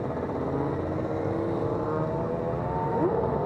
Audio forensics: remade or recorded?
recorded